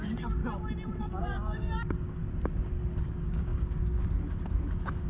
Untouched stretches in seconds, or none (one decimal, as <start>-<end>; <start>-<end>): 0.4-1.0; 2.2-3.0